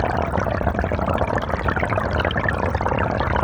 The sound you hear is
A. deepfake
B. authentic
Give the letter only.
B